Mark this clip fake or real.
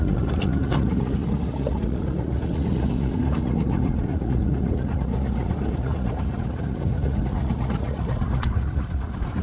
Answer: fake